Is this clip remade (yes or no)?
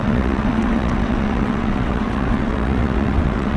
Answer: yes